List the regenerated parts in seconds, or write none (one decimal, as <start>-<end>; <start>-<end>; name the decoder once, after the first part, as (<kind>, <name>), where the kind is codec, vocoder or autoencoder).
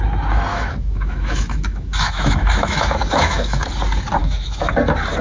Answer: 0.5-3.6 (autoencoder, DAC-VAE); 4.2-4.7